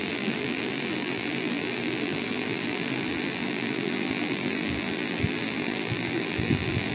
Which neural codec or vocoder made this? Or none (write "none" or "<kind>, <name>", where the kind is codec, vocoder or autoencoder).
vocoder, BigVGAN v2